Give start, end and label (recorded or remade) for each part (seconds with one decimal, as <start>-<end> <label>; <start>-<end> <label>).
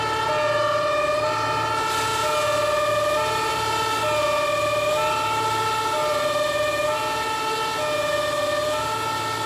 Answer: 0.0-9.5 recorded